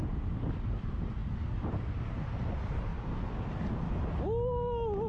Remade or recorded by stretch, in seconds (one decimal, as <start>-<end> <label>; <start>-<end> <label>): 0.0-5.1 recorded